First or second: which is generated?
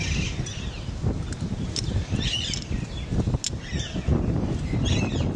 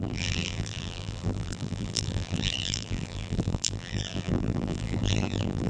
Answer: second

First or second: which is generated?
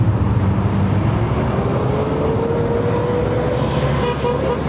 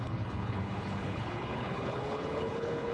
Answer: second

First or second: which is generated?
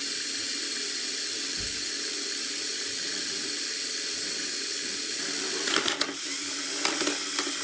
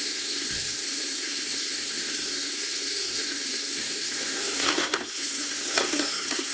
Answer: second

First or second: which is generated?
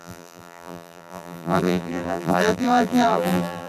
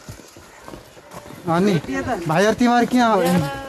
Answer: first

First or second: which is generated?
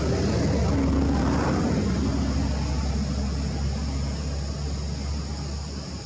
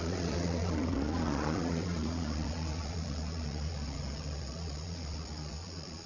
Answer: second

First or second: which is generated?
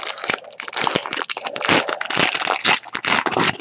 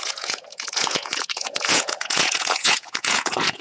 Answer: second